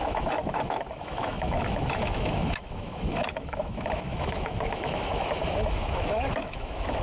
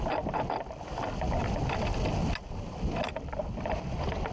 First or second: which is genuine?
second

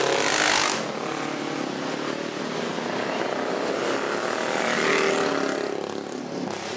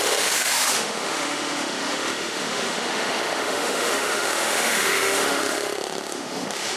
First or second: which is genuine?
first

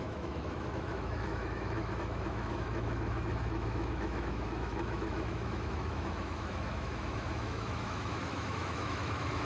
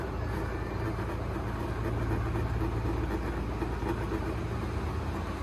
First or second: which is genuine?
second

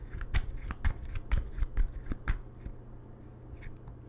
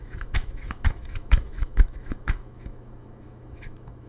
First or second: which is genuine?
first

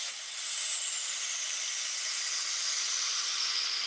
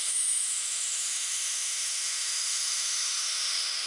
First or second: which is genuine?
first